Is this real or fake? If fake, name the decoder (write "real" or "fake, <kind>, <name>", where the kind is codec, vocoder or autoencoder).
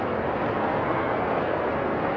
fake, codec, SNAC